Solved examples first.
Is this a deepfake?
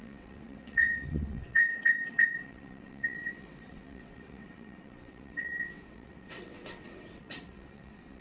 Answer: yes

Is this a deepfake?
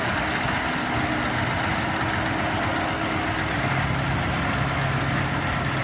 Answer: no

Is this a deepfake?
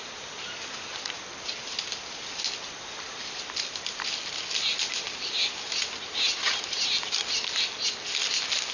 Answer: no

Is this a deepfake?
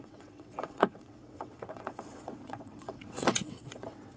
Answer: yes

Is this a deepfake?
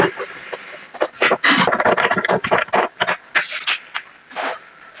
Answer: no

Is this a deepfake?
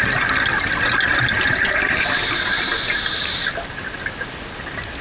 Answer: no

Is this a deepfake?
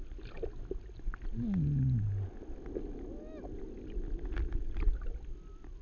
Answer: no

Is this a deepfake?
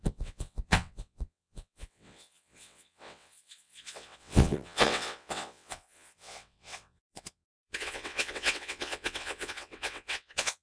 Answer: yes